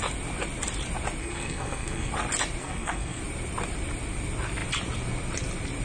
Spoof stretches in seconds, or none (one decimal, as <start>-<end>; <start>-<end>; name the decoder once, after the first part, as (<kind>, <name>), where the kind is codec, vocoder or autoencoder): 1.2-2.1 (codec, SNAC); 2.6-3.2

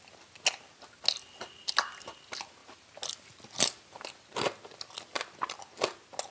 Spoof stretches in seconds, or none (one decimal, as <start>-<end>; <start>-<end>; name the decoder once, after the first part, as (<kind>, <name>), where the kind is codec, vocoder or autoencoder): none

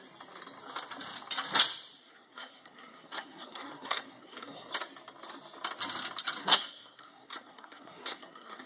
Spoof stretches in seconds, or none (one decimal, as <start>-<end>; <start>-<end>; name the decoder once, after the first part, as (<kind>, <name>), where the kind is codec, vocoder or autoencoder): 2.0-4.7 (codec, SNAC); 6.4-8.7

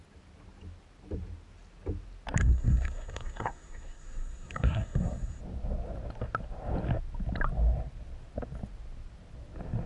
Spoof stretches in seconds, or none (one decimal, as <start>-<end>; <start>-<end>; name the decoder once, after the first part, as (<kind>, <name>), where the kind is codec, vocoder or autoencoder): 2.4-5.4 (codec, SNAC)